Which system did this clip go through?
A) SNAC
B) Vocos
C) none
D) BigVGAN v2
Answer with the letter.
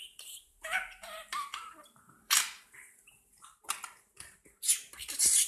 D